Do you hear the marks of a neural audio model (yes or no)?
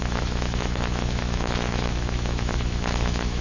yes